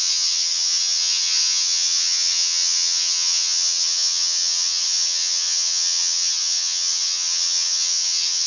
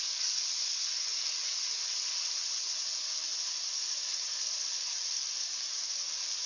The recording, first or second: second